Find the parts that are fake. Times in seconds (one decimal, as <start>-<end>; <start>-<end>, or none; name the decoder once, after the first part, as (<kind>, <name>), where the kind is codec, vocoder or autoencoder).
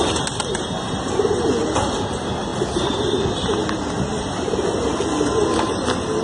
none